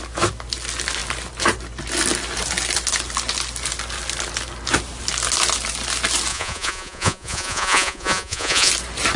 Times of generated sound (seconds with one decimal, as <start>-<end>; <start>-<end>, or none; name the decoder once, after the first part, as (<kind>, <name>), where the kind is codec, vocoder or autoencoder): 6.3-8.7 (vocoder, Vocos)